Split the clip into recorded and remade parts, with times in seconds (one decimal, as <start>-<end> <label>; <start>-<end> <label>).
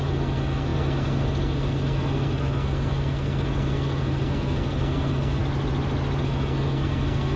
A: 0.0-5.4 remade; 5.4-6.2 recorded; 6.2-7.4 remade